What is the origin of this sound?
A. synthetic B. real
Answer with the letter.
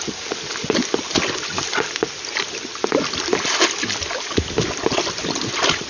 B